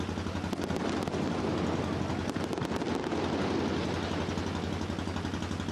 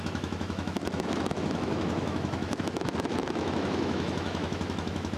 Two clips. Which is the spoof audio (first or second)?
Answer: second